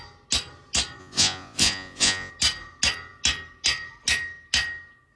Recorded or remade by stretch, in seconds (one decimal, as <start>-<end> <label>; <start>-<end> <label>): 0.0-1.0 recorded; 1.0-2.3 remade; 2.3-5.2 recorded